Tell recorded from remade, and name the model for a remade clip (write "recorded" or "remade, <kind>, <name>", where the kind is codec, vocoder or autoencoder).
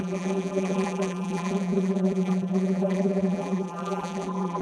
remade, vocoder, BigVGAN v2